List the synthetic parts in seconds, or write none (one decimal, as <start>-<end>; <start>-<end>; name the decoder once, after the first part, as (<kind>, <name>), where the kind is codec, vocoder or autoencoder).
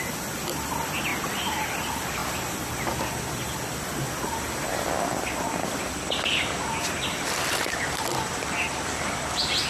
1.1-1.7 (vocoder, BigVGAN v2)